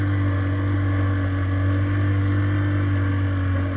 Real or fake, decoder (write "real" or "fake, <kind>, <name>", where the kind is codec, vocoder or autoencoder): real